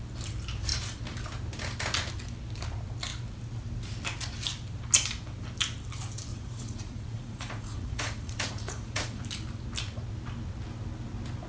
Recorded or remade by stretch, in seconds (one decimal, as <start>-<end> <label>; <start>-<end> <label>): 0.0-6.3 recorded; 6.3-9.2 remade; 9.2-11.5 recorded